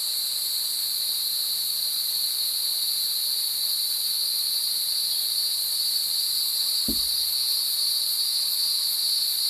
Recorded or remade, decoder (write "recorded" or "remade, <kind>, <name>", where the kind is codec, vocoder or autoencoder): remade, vocoder, BigVGAN v2